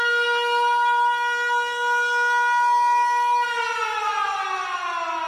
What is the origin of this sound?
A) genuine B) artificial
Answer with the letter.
A